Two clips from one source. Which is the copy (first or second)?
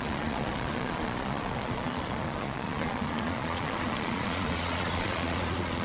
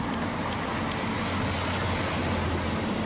first